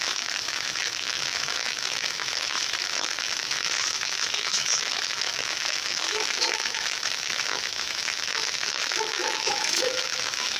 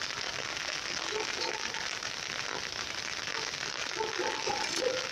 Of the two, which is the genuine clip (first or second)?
second